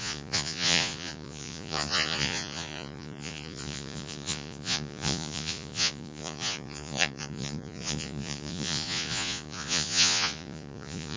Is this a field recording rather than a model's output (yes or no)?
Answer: no